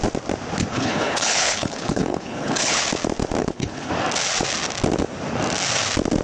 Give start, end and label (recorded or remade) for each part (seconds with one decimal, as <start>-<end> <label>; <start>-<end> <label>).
0.0-0.7 recorded; 0.7-2.8 remade; 2.8-3.4 recorded; 3.4-3.9 remade; 3.9-6.2 recorded